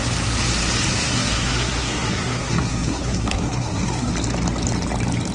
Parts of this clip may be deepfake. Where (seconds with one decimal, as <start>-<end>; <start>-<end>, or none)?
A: 0.9-4.1